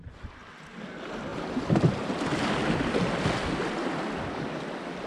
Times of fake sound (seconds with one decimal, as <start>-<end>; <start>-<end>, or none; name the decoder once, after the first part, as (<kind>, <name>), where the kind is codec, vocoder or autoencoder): none